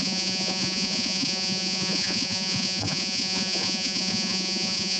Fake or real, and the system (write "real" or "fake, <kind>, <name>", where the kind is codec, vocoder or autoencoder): fake, vocoder, Vocos